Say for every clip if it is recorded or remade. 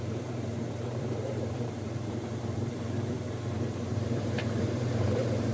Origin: remade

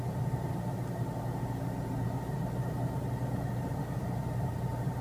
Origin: remade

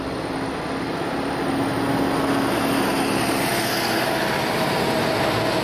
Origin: recorded